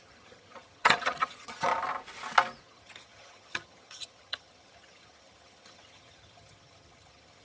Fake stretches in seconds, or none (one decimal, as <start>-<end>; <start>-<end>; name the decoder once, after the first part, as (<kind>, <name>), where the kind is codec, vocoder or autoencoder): 0.0-1.7 (vocoder, HiFi-GAN); 2.6-7.4